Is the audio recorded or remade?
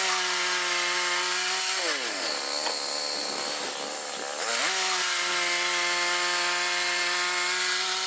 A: recorded